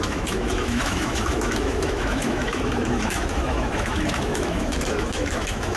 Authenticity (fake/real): fake